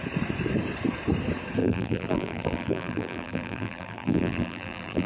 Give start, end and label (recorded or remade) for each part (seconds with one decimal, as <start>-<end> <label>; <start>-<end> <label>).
0.0-1.6 recorded; 1.6-5.1 remade